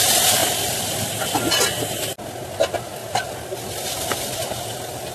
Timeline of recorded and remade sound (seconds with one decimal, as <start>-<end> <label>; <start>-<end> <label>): 0.0-0.4 recorded; 0.4-1.4 remade; 1.4-3.0 recorded; 3.0-4.2 remade; 4.2-5.1 recorded